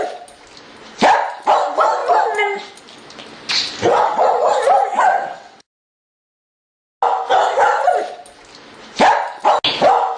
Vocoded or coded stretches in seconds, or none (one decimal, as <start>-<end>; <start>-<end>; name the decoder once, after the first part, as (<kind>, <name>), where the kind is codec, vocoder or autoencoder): 3.9-4.5 (vocoder, WaveNeXt); 4.9-5.6